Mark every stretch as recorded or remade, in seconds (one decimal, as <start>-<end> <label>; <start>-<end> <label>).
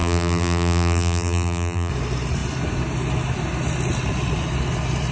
0.0-1.9 remade; 1.9-5.1 recorded